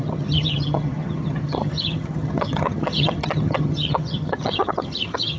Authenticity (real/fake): fake